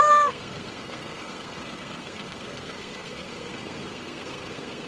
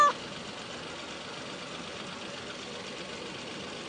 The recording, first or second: second